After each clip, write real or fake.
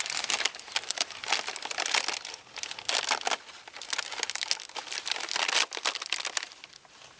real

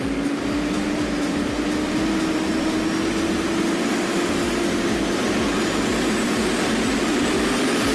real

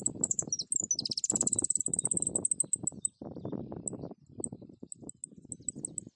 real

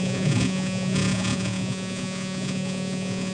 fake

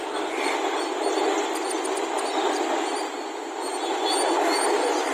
real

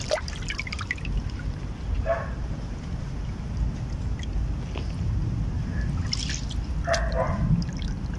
real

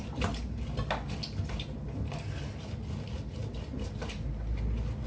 real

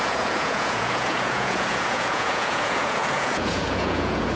fake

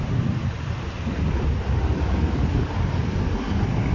real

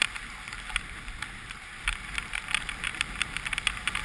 real